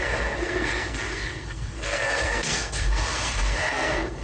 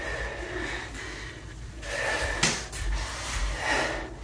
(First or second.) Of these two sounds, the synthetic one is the first